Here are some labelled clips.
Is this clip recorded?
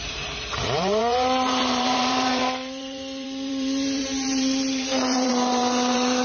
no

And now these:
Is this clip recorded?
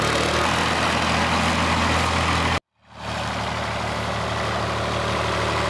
yes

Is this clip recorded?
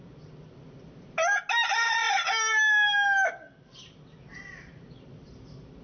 yes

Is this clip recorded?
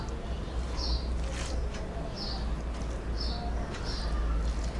yes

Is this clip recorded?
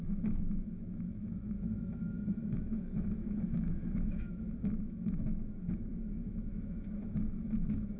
no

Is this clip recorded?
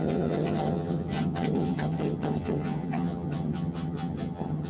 no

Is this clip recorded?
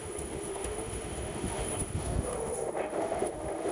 no